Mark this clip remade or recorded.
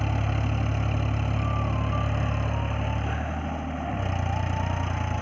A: recorded